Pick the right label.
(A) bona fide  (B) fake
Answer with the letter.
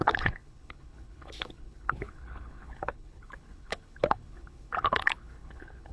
B